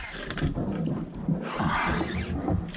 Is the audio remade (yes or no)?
no